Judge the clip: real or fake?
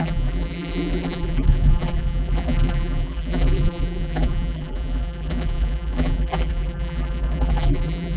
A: fake